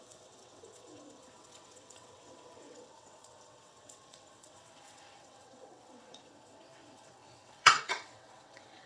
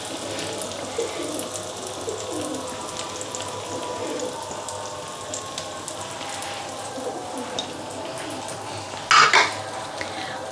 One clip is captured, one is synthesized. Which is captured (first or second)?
second